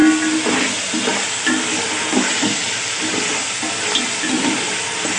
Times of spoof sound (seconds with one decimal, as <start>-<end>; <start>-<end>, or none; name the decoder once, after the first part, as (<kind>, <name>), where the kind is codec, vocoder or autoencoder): none